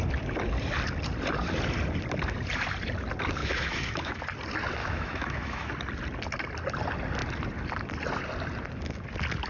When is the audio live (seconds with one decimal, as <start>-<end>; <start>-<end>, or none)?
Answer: 0.0-3.4; 4.2-4.8; 5.7-9.5